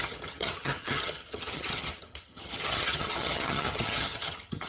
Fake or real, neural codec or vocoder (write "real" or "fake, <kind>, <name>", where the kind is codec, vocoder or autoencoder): fake, vocoder, HiFi-GAN